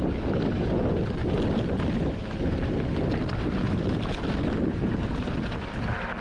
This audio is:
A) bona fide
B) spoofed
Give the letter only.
A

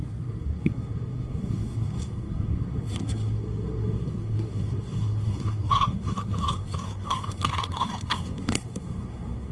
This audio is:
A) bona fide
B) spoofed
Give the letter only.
B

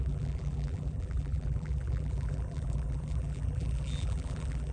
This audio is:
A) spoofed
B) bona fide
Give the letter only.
A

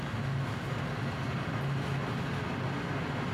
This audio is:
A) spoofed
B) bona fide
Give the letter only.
B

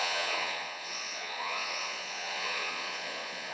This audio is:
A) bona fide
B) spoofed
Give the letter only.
B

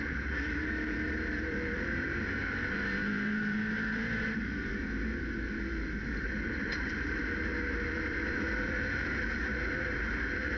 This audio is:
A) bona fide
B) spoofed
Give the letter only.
B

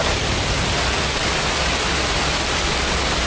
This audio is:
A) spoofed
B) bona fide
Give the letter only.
B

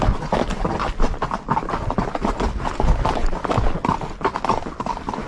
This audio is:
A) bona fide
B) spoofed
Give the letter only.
A